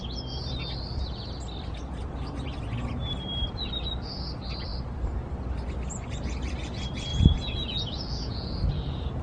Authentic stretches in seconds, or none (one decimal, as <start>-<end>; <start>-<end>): 0.0-7.1